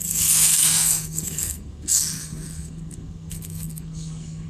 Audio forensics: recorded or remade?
remade